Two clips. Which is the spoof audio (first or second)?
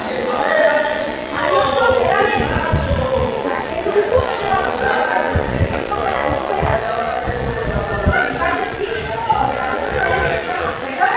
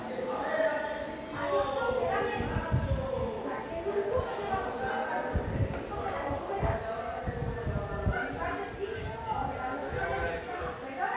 first